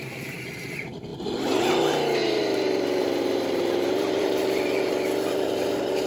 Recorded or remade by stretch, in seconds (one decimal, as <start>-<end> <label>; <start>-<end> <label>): 0.0-2.2 recorded; 2.2-6.1 remade